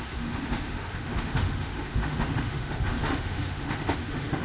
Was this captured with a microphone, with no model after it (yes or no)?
no